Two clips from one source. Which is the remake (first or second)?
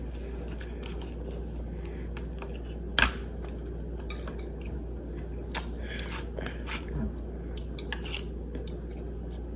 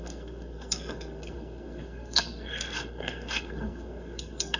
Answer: second